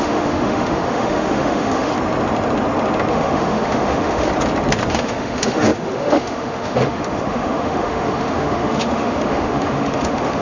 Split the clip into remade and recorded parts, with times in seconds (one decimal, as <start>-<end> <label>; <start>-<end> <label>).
0.0-1.9 remade; 1.9-3.1 recorded; 3.1-4.3 remade; 4.3-4.9 recorded; 4.9-10.4 remade